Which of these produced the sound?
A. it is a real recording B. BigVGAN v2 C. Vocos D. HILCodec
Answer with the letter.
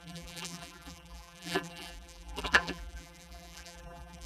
B